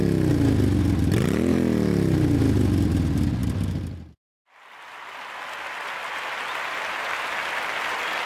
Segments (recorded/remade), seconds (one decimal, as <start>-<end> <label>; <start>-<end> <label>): 0.0-8.2 recorded